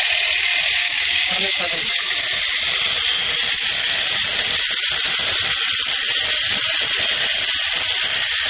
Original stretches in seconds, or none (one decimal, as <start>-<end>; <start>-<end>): 0.0-0.8; 2.1-8.5